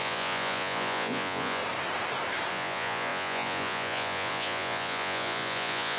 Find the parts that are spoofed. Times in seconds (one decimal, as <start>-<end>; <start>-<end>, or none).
0.0-1.6; 2.5-6.0